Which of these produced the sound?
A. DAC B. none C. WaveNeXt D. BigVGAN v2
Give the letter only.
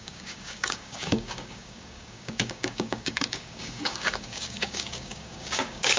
A